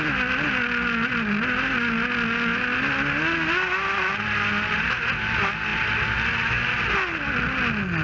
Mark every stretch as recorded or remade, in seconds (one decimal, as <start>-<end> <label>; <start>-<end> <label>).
0.0-8.0 recorded